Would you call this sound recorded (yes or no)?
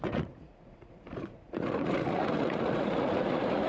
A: no